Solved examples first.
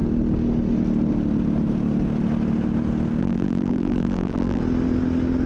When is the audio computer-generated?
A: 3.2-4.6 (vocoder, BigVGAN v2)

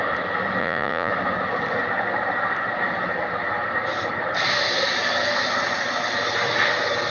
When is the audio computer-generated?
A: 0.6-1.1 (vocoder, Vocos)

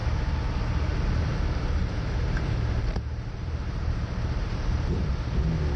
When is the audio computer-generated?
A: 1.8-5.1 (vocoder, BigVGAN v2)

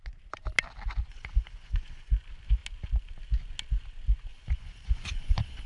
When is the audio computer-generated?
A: 1.1-2.1 (vocoder, Vocos); 4.3-5.7

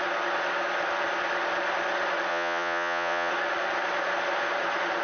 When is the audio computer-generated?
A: 2.3-3.3 (vocoder, Vocos)